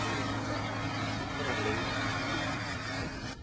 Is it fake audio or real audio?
real